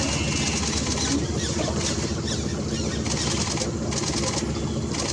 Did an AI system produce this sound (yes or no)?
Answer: no